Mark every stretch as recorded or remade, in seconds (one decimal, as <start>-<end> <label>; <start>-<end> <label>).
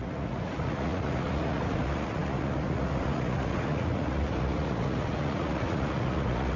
0.0-6.6 remade